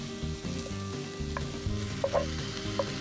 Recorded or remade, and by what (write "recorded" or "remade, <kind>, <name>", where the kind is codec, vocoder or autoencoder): recorded